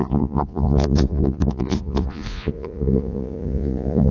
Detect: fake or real fake